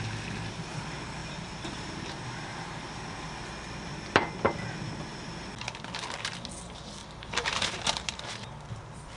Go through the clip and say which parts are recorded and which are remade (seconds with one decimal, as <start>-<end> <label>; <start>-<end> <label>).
0.0-1.2 recorded; 1.2-3.0 remade; 3.0-7.0 recorded; 7.0-8.2 remade; 8.2-9.2 recorded